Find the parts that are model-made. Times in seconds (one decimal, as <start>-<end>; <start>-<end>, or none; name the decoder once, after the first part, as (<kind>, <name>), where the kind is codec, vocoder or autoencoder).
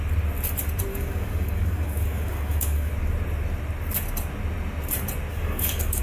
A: 0.9-2.9 (codec, DAC); 5.3-6.0